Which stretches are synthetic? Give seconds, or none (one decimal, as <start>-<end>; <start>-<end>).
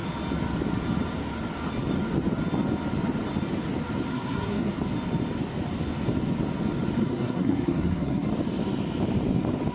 4.1-4.8; 7.0-8.3